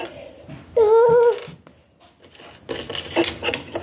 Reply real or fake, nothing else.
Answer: real